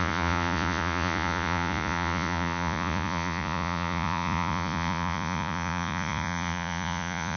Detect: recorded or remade remade